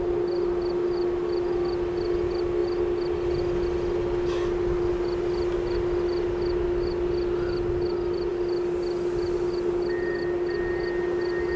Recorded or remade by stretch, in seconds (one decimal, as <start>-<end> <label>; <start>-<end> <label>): 0.0-11.6 recorded